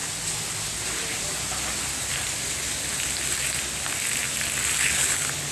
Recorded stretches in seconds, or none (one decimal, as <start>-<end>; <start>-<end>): 0.0-4.8